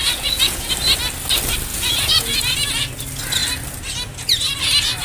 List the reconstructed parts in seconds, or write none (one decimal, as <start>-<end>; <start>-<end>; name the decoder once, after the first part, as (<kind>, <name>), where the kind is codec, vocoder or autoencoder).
0.0-0.7 (vocoder, Vocos); 1.7-2.4